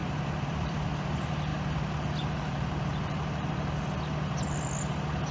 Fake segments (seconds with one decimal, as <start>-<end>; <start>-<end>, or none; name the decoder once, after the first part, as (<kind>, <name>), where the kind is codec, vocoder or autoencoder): 0.0-0.9 (vocoder, BigVGAN v2); 1.5-4.7